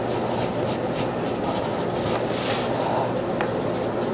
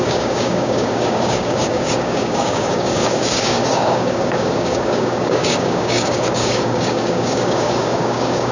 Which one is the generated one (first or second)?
second